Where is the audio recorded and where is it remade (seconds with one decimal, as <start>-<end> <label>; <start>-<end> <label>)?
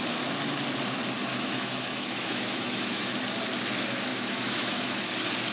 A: 0.0-1.3 recorded; 1.3-3.1 remade; 3.1-4.1 recorded; 4.1-5.0 remade; 5.0-5.5 recorded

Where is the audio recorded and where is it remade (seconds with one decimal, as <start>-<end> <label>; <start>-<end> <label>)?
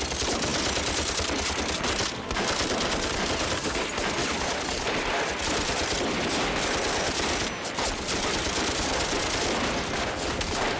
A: 0.0-10.8 recorded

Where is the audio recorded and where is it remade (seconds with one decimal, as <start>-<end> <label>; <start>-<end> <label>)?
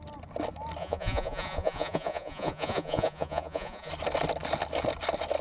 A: 0.0-0.8 recorded; 0.8-3.9 remade; 3.9-5.4 recorded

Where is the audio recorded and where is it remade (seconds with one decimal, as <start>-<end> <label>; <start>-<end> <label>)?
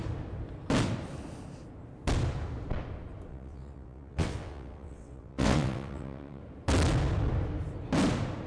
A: 0.0-3.3 recorded; 3.3-6.4 remade; 6.4-8.5 recorded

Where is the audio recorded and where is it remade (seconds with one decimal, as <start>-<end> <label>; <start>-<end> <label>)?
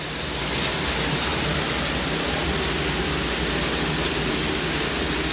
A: 0.0-5.3 recorded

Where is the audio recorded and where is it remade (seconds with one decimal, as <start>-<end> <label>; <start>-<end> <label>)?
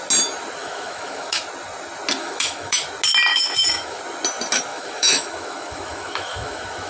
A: 0.0-0.6 recorded; 0.6-1.4 remade; 1.4-2.2 recorded; 2.2-2.8 remade; 2.8-3.3 recorded; 3.3-4.0 remade; 4.0-4.7 recorded; 4.7-6.9 remade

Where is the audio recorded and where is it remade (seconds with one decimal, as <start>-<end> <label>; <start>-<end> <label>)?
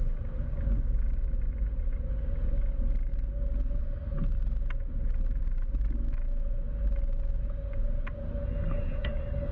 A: 0.0-8.4 recorded; 8.4-9.5 remade